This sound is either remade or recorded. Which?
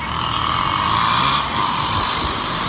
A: recorded